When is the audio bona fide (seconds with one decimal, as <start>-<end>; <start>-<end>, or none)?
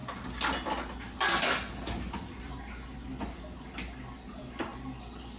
0.0-5.4